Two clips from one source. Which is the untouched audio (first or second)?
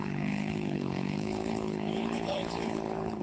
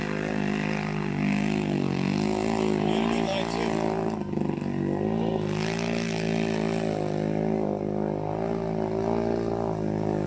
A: second